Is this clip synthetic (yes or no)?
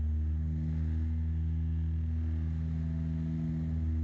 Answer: no